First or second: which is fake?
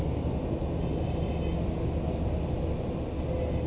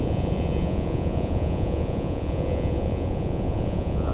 second